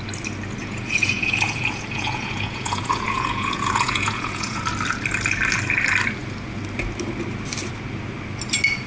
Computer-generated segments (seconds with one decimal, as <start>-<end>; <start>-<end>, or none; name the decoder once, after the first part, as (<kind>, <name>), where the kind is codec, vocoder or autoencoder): 0.6-4.6 (vocoder, Vocos)